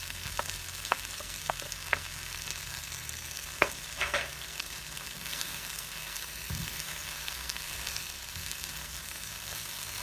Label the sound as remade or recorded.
remade